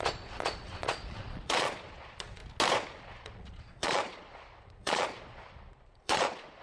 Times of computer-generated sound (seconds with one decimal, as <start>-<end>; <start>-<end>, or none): 0.0-2.4; 3.0-6.6